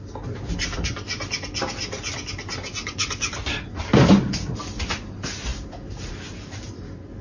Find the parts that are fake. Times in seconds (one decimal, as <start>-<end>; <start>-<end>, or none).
none